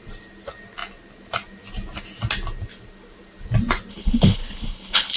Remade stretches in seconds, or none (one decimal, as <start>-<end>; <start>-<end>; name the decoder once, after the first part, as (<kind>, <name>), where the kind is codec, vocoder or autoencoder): 3.9-5.2 (codec, HILCodec)